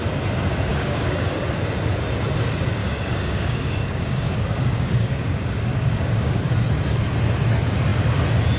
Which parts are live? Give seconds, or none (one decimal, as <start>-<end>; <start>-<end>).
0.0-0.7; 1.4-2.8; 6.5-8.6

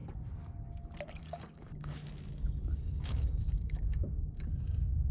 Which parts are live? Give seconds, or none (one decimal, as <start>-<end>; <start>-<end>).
0.0-1.2; 2.0-2.8; 4.5-5.1

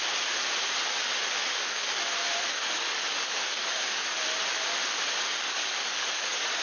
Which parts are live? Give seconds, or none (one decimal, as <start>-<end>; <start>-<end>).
0.0-1.4; 2.0-2.5; 4.2-5.3

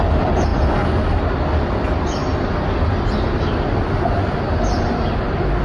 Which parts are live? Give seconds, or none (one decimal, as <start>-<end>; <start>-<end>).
0.0-5.6

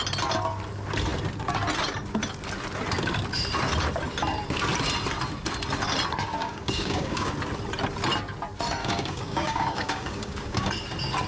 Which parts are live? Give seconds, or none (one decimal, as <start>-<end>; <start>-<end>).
0.0-6.4; 7.3-8.8; 10.7-11.3

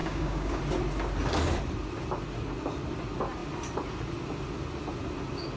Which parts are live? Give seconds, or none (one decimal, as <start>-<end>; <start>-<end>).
0.6-5.6